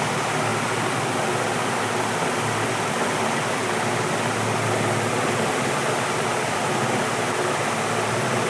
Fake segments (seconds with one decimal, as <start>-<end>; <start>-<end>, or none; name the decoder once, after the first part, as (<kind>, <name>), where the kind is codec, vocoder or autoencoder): none